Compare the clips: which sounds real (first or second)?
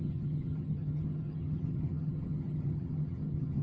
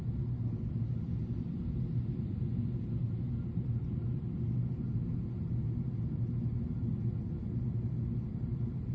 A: second